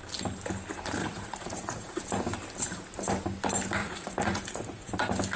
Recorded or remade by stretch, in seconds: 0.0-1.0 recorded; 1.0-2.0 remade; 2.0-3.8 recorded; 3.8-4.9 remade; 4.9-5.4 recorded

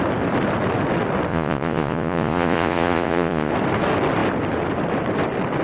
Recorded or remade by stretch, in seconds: 0.0-1.3 recorded; 1.3-3.5 remade; 3.5-5.6 recorded

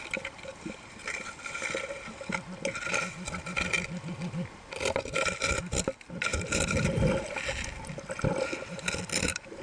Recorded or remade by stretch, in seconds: 0.0-9.6 recorded

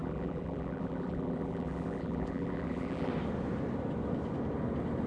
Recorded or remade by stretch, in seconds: 0.0-3.1 remade; 3.1-5.1 recorded